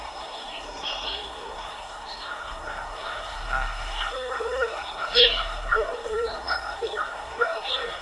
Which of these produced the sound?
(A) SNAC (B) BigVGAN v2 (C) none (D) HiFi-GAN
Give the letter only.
A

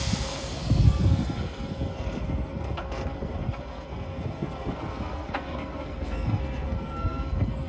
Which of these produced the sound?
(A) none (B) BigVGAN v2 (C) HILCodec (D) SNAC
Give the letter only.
D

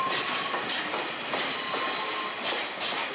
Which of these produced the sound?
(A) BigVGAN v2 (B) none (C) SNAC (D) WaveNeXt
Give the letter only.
B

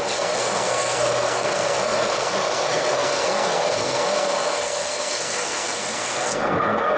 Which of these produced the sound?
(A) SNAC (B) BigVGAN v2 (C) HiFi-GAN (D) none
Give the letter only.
A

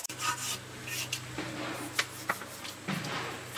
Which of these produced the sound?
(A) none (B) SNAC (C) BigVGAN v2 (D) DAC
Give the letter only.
A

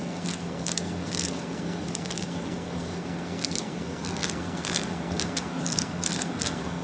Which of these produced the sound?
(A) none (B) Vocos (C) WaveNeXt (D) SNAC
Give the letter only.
D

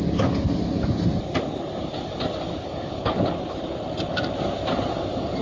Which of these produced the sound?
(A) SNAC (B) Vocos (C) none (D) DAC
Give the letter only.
C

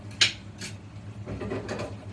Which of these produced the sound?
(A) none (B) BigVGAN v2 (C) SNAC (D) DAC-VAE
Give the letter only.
A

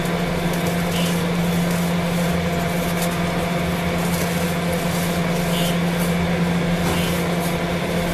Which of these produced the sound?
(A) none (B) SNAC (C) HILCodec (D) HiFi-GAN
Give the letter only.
A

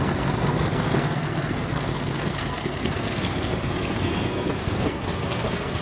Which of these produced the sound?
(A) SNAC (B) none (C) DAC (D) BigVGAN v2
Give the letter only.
A